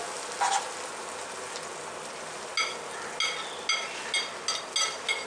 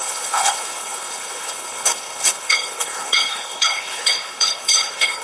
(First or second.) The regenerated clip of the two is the second